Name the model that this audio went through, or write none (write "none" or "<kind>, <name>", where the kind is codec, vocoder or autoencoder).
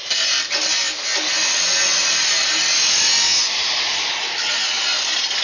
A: none